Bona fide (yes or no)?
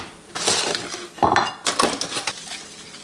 yes